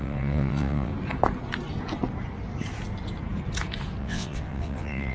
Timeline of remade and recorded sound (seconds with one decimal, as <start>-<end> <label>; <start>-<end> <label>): 0.0-0.9 remade; 0.9-4.0 recorded; 4.0-5.1 remade

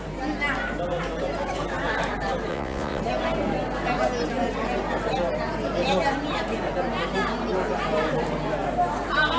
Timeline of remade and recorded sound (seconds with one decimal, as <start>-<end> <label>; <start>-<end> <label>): 0.0-2.5 recorded; 2.5-3.0 remade; 3.0-9.4 recorded

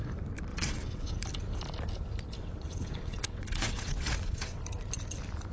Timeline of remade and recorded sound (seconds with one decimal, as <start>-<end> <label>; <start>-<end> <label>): 0.0-0.5 recorded; 0.5-1.1 remade; 1.1-2.4 recorded; 2.4-4.6 remade; 4.6-5.5 recorded

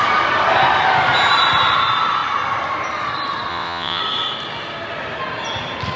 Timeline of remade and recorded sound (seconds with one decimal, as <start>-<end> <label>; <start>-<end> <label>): 0.0-3.5 recorded; 3.5-4.0 remade; 4.0-6.0 recorded